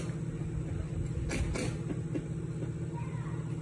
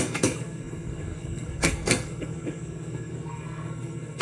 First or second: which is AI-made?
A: second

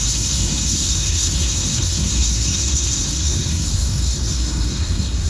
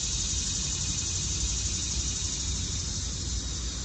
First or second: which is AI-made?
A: first